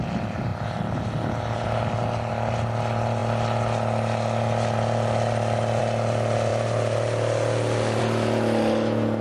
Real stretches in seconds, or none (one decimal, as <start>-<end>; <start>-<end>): 0.0-9.2